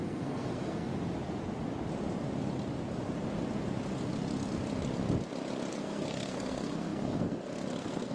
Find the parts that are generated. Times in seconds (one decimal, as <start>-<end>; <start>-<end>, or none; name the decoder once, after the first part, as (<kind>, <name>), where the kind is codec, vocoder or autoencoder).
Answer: 0.0-0.9 (codec, SNAC); 5.7-8.1